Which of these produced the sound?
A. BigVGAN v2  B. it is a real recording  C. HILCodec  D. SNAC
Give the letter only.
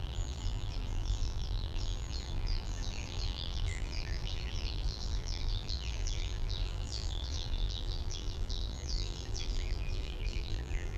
A